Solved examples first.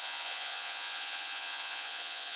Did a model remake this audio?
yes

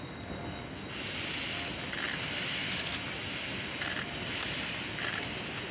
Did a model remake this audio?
no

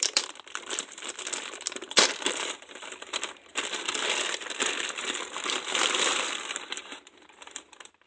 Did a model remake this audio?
yes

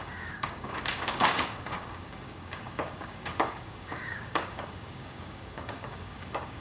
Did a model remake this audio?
yes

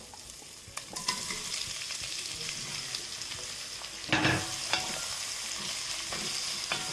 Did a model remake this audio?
no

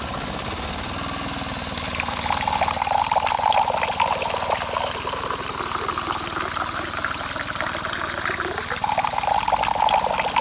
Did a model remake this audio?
no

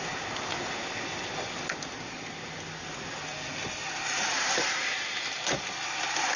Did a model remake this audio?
no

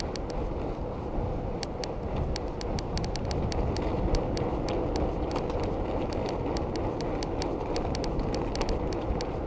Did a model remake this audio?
no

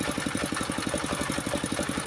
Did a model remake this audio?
no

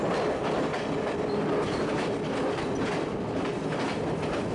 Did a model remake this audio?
no